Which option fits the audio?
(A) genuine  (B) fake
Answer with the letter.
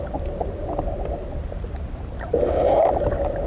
A